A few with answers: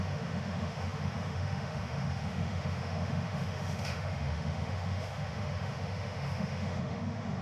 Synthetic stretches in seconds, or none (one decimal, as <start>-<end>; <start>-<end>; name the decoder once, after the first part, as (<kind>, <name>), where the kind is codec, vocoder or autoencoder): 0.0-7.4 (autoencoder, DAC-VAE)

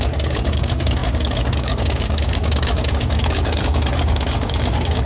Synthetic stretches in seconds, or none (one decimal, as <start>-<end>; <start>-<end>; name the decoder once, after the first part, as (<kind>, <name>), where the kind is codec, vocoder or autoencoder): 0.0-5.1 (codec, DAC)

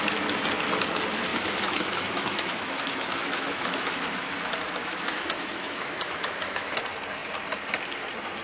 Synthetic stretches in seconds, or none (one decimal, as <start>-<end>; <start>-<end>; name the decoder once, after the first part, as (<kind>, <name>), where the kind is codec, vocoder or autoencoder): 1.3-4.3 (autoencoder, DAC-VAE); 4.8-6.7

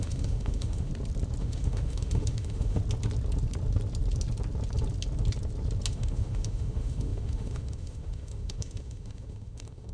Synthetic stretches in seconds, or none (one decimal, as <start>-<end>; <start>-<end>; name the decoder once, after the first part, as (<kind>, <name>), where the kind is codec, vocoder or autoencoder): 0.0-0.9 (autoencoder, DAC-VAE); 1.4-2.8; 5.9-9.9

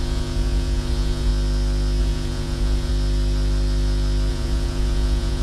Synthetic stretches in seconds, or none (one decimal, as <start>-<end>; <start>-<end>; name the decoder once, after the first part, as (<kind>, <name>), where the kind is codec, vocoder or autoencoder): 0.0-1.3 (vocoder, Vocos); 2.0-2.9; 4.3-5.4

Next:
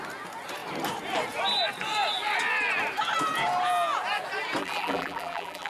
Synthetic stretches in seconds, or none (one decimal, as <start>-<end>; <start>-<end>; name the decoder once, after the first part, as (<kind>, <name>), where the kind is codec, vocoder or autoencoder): 4.6-5.7 (vocoder, BigVGAN v2)

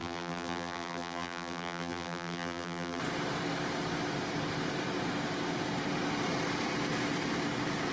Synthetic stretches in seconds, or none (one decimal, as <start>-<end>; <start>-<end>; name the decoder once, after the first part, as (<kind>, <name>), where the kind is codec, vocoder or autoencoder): 0.0-3.0 (vocoder, BigVGAN v2)